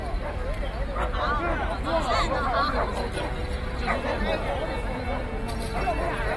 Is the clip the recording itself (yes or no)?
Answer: yes